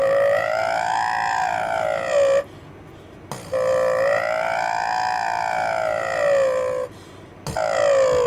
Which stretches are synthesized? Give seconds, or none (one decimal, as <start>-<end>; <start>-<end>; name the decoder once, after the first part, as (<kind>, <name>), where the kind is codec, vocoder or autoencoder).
0.0-0.6 (autoencoder, DAC-VAE)